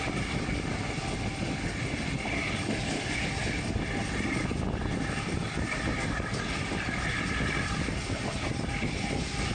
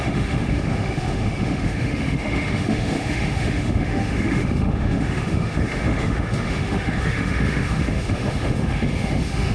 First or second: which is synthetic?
second